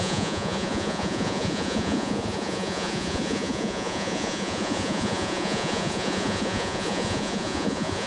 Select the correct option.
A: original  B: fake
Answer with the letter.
B